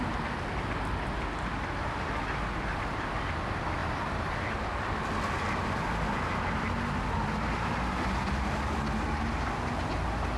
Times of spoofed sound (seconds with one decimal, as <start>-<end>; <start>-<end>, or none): none